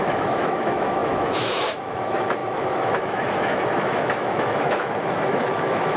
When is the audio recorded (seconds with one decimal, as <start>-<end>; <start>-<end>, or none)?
none